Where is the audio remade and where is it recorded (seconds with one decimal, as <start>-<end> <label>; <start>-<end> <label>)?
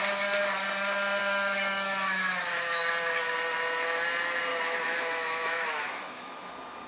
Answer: 0.0-1.2 recorded; 1.2-2.8 remade; 2.8-4.5 recorded; 4.5-6.5 remade; 6.5-6.9 recorded